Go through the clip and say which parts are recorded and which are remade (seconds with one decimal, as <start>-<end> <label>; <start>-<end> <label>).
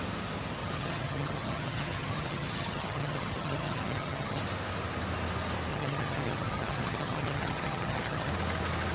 0.0-0.6 recorded; 0.6-4.4 remade; 4.4-5.7 recorded; 5.7-8.3 remade; 8.3-8.9 recorded